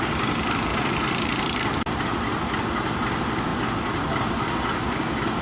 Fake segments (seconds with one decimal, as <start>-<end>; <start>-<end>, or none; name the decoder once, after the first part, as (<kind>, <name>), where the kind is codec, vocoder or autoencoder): 0.7-2.0 (vocoder, BigVGAN v2)